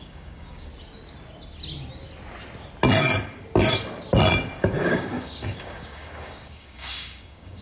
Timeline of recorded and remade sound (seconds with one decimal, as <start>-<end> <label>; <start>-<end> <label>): 0.0-0.7 remade; 0.7-4.6 recorded; 4.6-7.6 remade